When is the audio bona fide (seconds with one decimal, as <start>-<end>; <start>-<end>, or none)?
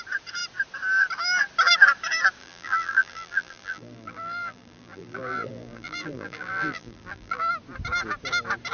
0.0-2.4; 7.5-8.7